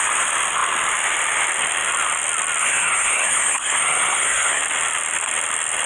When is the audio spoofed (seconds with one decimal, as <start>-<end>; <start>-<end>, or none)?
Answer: 2.6-4.6